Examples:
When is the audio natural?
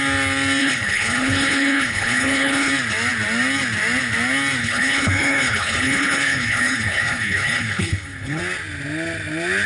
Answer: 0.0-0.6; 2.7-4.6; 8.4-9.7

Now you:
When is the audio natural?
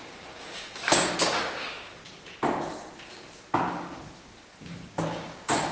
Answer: 2.0-3.0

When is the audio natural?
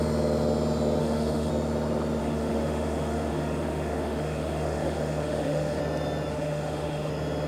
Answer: 0.0-1.0; 1.5-2.2; 5.8-6.3; 7.1-7.5